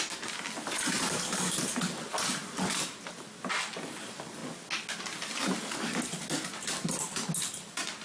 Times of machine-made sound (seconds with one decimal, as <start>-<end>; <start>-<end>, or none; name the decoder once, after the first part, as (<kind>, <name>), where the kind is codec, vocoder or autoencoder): none